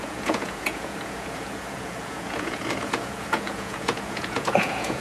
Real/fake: fake